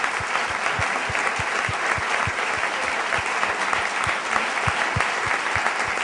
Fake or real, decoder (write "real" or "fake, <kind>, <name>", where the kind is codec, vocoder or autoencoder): fake, vocoder, BigVGAN v2